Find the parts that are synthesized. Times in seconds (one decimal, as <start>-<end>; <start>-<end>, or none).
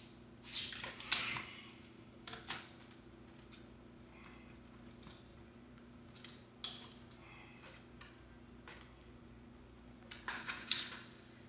5.3-5.8; 8.7-10.9